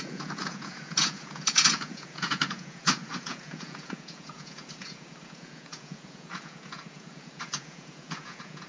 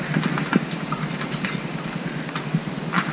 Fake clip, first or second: first